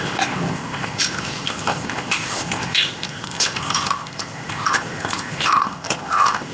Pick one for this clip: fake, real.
fake